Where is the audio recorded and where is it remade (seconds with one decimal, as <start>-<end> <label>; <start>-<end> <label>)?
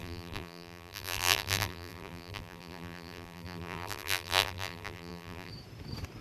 0.0-5.5 remade; 5.5-6.2 recorded